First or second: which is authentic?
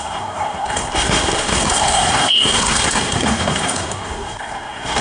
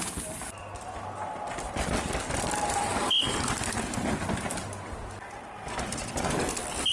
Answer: second